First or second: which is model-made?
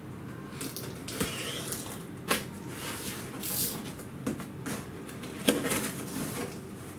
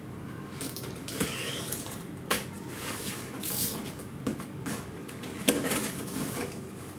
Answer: second